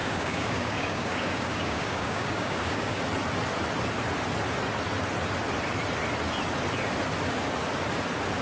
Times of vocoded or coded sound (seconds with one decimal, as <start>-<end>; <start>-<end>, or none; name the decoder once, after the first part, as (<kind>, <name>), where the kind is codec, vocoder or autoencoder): 0.0-3.0 (codec, DAC)